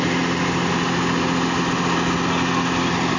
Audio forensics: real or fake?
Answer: real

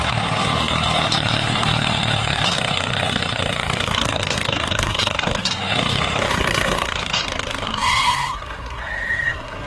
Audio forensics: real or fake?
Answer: fake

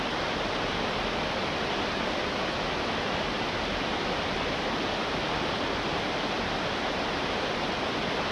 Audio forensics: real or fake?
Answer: real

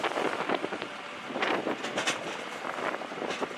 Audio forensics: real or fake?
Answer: real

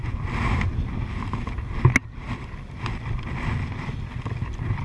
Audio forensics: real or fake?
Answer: real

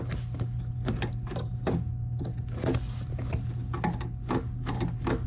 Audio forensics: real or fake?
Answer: real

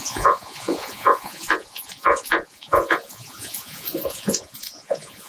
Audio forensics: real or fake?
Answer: fake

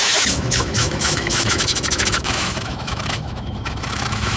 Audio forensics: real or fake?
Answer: fake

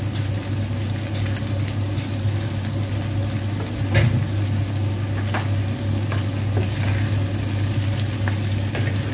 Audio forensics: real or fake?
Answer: real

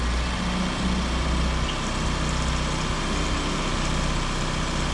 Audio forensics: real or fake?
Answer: real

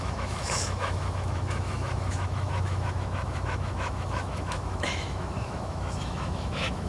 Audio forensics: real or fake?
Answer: fake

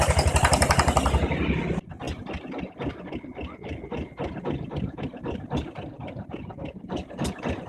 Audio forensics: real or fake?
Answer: real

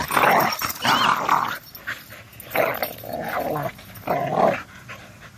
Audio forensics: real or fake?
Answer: real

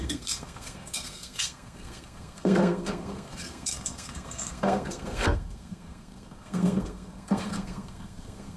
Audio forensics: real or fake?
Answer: fake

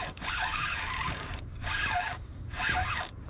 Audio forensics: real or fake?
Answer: fake